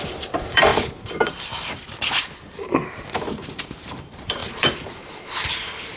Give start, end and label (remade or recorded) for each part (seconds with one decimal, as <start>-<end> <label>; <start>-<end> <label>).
0.0-6.0 remade

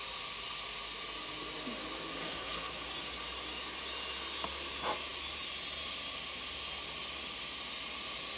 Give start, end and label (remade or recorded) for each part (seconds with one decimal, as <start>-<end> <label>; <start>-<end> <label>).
0.0-2.2 recorded; 2.2-2.7 remade; 2.7-8.4 recorded

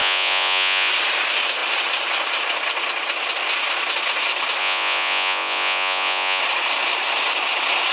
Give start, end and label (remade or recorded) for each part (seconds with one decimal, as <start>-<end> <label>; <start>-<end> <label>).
0.0-0.9 remade; 0.9-4.6 recorded; 4.6-6.4 remade; 6.4-7.9 recorded

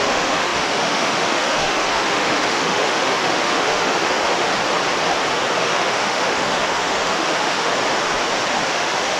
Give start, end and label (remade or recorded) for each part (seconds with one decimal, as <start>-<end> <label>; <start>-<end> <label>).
0.0-4.6 remade; 4.6-5.5 recorded; 5.5-7.7 remade; 7.7-8.7 recorded; 8.7-9.2 remade

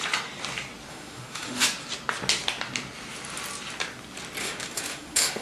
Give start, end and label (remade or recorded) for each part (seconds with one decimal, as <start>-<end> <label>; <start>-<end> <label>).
0.0-0.9 recorded; 0.9-1.6 remade; 1.6-4.4 recorded; 4.4-5.4 remade

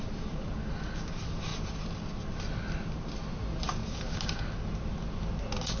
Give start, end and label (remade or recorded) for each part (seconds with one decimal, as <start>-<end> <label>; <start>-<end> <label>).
0.0-3.8 recorded; 3.8-4.4 remade; 4.4-5.8 recorded